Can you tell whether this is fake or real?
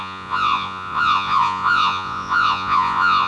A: fake